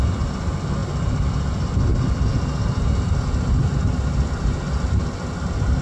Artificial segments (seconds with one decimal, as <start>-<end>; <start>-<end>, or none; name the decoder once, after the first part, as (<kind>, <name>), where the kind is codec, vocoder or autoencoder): none